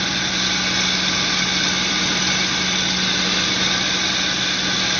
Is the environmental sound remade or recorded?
recorded